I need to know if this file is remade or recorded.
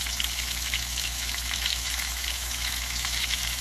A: remade